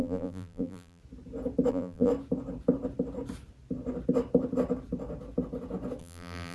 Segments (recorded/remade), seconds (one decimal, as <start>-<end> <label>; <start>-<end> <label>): 0.0-1.0 remade; 1.0-1.7 recorded; 1.7-2.1 remade; 2.1-6.0 recorded; 6.0-6.5 remade